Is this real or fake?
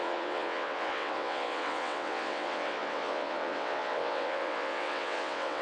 fake